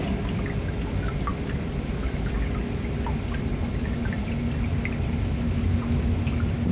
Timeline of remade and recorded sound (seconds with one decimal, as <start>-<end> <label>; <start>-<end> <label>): 0.0-6.7 recorded